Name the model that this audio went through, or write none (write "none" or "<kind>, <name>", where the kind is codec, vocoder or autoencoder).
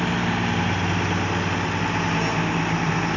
none